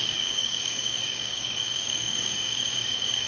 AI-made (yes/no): yes